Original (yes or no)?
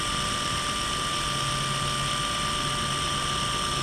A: yes